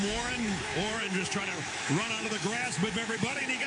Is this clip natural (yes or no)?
no